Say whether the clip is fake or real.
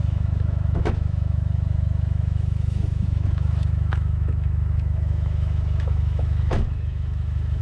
fake